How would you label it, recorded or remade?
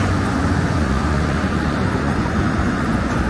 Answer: remade